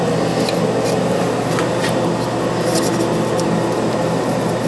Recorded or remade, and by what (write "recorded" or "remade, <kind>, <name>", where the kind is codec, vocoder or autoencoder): recorded